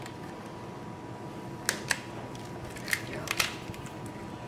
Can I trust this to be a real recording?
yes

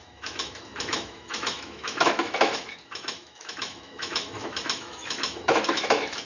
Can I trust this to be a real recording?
no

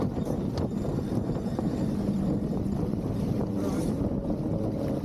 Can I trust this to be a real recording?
yes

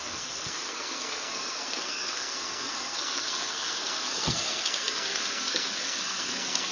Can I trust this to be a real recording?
no